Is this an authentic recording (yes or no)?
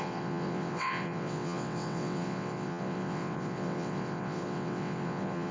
no